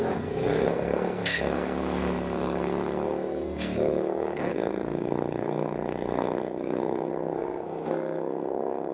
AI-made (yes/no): yes